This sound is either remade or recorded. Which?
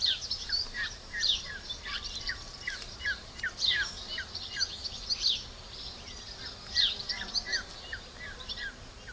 remade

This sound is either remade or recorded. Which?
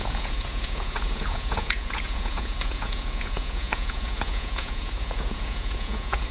remade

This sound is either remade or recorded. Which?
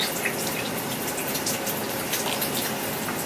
recorded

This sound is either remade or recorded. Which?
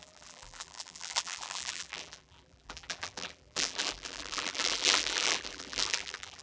remade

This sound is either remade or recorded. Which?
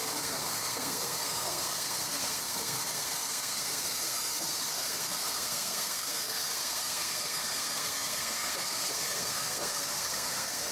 remade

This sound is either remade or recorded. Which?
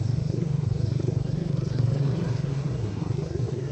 remade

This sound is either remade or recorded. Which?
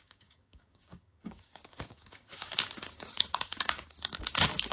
remade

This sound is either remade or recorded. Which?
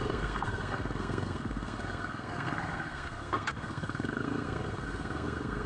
remade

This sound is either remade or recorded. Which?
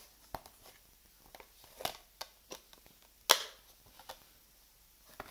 recorded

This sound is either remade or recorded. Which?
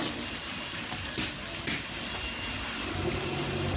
recorded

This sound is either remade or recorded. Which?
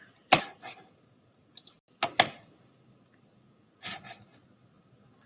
recorded